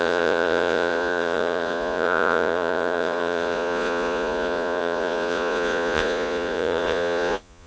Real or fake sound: fake